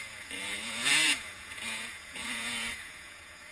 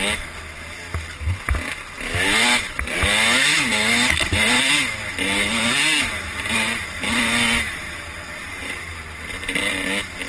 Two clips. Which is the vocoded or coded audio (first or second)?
first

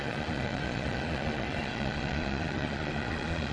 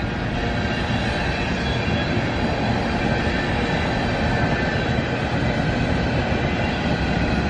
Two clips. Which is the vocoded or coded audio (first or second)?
first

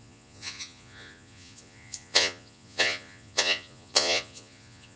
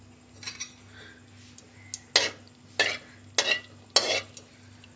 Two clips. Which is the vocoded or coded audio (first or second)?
first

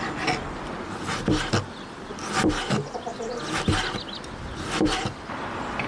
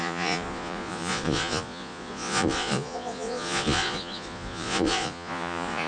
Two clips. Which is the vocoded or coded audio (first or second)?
second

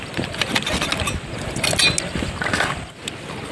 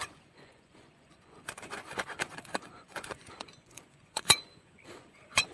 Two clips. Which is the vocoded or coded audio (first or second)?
second